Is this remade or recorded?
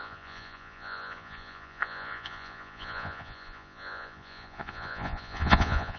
remade